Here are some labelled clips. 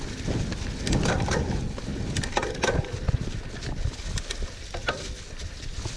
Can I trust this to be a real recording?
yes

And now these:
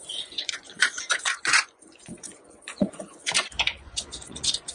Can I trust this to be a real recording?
no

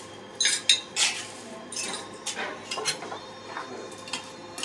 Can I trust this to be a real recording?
yes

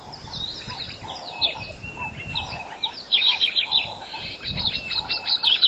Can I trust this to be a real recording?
yes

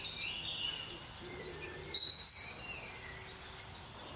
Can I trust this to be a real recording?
yes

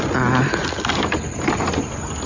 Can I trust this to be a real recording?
yes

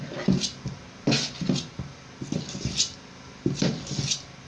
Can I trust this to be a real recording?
yes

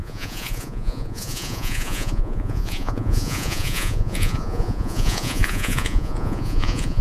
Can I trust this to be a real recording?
no